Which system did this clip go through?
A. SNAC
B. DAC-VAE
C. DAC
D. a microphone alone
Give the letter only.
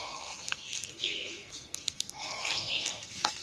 A